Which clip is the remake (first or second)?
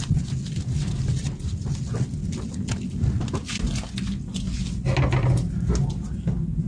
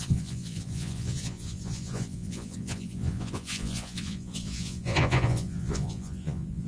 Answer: second